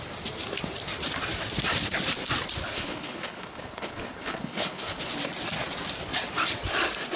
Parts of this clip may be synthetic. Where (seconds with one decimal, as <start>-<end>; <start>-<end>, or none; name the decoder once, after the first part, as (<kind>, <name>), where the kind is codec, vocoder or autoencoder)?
2.7-5.1 (codec, HILCodec)